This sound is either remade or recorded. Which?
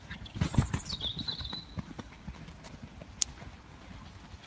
recorded